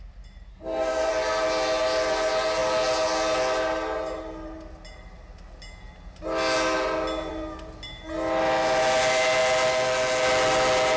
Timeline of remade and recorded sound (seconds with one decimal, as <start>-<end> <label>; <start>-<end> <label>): 0.0-0.5 recorded; 0.5-1.1 remade; 1.1-11.0 recorded